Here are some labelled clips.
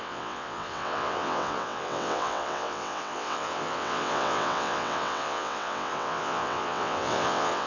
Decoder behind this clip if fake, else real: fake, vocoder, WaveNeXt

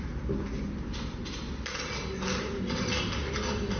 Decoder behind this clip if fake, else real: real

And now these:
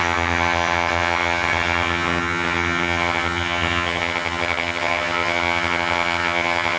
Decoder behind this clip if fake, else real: fake, vocoder, HiFi-GAN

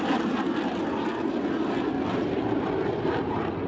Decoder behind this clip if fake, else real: real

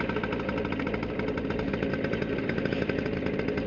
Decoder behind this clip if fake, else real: real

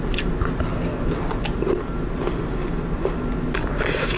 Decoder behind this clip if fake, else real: real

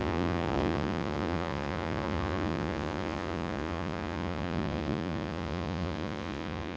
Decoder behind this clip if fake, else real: fake, vocoder, Vocos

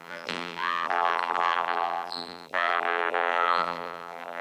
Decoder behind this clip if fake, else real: fake, vocoder, BigVGAN v2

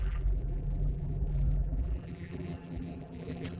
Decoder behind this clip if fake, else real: fake, vocoder, BigVGAN v2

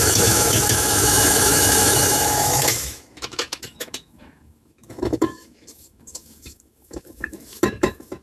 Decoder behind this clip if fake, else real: fake, autoencoder, DAC-VAE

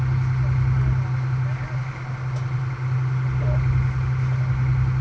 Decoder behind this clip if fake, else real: real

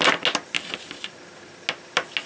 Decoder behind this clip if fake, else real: real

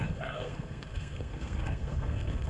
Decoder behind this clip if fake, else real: fake, codec, SNAC